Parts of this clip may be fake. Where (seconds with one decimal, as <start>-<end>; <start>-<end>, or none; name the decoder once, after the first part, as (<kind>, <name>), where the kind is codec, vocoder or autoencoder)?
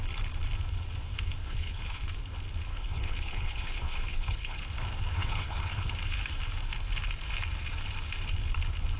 1.4-2.0 (codec, HILCodec); 2.7-4.6; 5.1-5.9